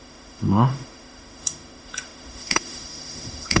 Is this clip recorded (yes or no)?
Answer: no